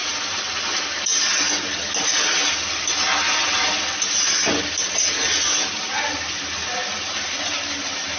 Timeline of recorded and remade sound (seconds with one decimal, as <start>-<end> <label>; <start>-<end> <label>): 0.0-8.2 recorded